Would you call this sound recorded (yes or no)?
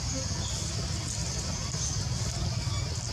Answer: yes